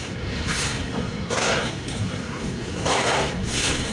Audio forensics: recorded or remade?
remade